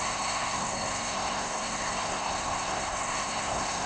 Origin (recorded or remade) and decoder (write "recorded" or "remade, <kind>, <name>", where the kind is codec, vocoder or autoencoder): remade, codec, SNAC